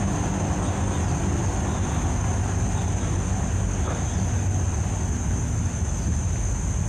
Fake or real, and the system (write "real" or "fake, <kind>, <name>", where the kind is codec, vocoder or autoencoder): real